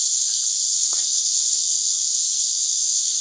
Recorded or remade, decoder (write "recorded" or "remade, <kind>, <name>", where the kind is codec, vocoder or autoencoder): remade, codec, SNAC